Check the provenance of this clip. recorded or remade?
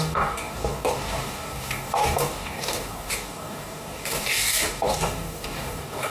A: remade